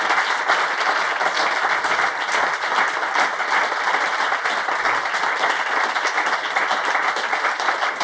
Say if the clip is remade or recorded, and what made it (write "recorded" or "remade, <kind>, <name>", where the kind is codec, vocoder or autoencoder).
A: recorded